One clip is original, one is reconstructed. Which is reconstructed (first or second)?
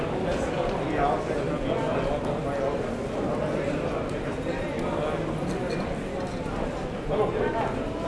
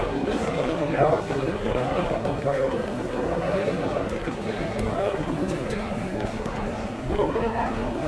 second